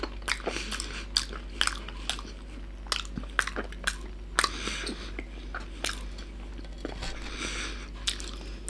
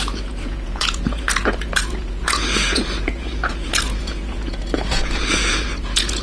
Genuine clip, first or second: first